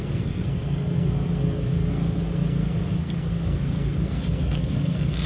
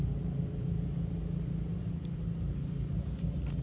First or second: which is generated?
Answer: first